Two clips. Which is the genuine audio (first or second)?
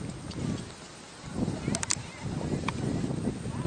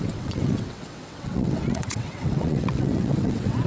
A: first